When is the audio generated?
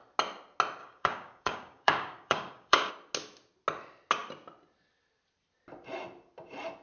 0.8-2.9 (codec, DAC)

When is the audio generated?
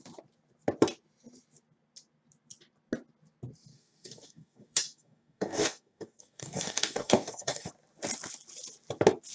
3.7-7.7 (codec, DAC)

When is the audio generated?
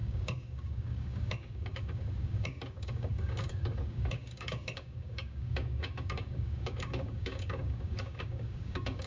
0.0-9.1 (codec, DAC)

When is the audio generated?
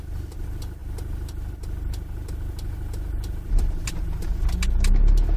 none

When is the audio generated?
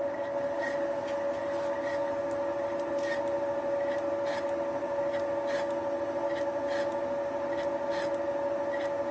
none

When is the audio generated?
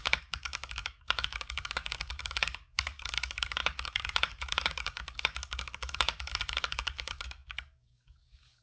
0.0-8.6 (codec, DAC)